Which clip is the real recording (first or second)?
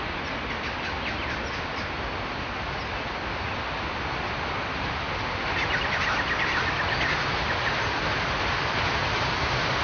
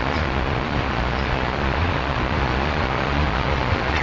first